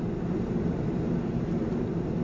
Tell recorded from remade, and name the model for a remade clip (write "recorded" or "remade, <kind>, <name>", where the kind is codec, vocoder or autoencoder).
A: recorded